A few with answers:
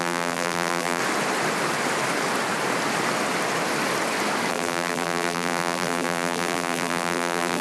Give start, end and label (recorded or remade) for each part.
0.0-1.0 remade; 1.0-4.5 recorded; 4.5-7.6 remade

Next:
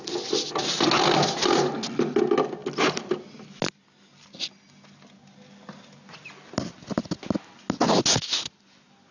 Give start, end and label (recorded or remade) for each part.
0.0-9.1 recorded

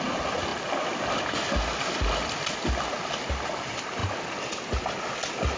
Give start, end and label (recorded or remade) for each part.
0.0-5.6 recorded

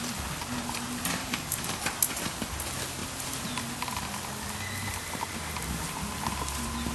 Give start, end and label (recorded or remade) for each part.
0.0-1.2 recorded; 1.2-1.8 remade; 1.8-6.9 recorded

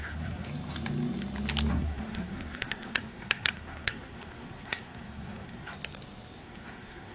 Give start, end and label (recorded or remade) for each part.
0.0-0.5 remade; 0.5-1.7 recorded; 1.7-5.7 remade; 5.7-6.4 recorded; 6.4-7.1 remade

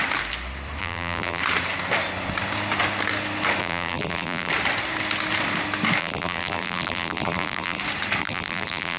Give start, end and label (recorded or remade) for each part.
0.0-0.8 recorded; 0.8-1.4 remade; 1.4-3.6 recorded; 3.6-4.5 remade; 4.5-6.0 recorded; 6.0-7.8 remade; 7.8-8.2 recorded; 8.2-9.0 remade